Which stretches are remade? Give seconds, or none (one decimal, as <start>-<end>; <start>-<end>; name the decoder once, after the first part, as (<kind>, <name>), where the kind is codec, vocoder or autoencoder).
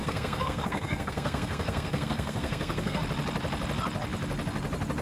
0.0-3.0 (codec, SNAC)